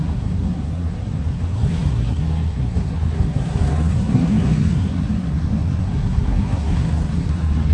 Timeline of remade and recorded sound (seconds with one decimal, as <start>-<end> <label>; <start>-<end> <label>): 0.0-7.7 remade